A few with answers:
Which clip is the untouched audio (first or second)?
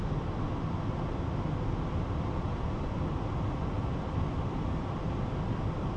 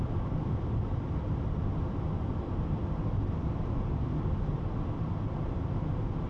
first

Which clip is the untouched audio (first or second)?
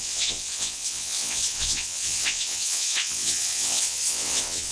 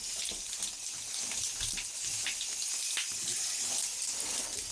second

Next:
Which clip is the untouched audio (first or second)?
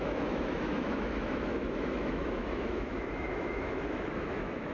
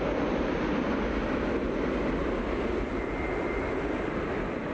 second